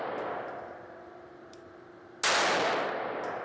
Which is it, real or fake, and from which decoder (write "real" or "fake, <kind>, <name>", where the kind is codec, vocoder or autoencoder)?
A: real